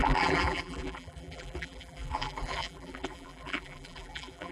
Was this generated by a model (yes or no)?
yes